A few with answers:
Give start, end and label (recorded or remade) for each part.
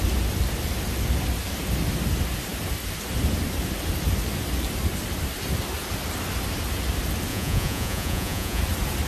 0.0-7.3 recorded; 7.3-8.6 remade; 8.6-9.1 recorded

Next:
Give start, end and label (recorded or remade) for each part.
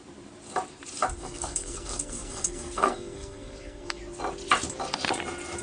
0.0-1.2 recorded; 1.2-4.0 remade; 4.0-5.6 recorded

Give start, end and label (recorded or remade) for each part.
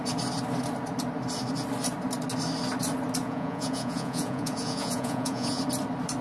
0.0-3.2 recorded; 3.2-5.6 remade; 5.6-6.2 recorded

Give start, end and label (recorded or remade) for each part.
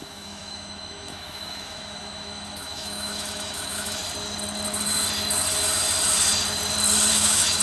0.0-4.0 remade; 4.0-7.1 recorded; 7.1-7.6 remade